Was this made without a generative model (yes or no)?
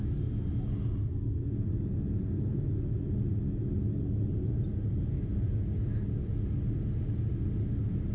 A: yes